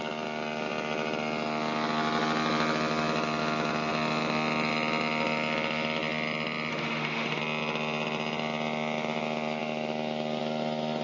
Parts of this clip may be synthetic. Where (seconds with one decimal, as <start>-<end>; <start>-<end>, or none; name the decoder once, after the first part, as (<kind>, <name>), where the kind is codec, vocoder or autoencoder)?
6.7-7.4 (autoencoder, DAC-VAE)